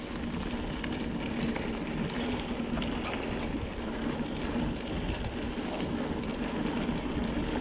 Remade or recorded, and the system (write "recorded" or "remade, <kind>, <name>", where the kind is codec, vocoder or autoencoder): recorded